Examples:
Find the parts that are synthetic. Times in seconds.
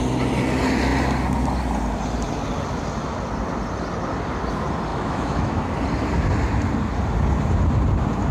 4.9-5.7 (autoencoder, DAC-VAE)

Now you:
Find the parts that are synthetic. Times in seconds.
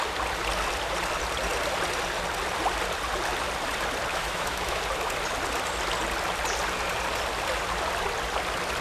4.1-4.8 (autoencoder, DAC-VAE)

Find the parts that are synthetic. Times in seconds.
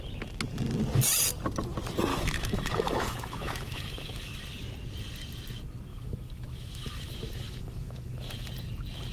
2.1-4.4 (autoencoder, DAC-VAE); 5.9-8.5